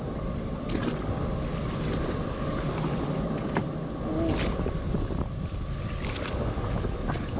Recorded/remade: recorded